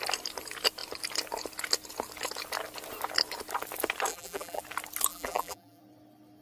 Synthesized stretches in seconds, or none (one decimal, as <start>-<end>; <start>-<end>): 4.1-4.6; 5.1-5.8